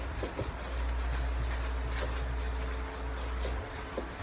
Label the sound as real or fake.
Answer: real